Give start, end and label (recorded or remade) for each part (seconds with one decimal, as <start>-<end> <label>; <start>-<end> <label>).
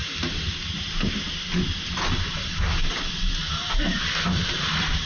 0.0-5.1 recorded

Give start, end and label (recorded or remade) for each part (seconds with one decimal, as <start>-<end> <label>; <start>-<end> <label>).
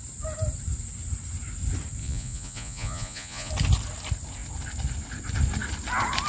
0.0-2.0 recorded; 2.0-3.5 remade; 3.5-6.3 recorded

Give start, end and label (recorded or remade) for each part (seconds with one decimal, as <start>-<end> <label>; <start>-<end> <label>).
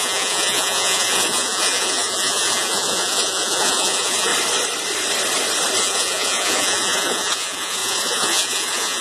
0.0-4.3 remade; 4.3-5.8 recorded; 5.8-9.0 remade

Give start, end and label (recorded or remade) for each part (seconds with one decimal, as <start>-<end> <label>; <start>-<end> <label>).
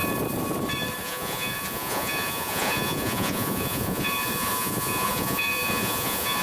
0.0-1.0 recorded; 1.0-6.4 remade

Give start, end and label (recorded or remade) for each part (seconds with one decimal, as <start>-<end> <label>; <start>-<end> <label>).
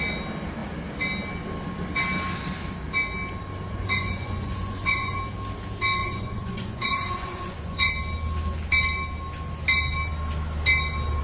0.0-3.7 recorded; 3.7-5.2 remade; 5.2-6.0 recorded; 6.0-7.9 remade; 7.9-11.2 recorded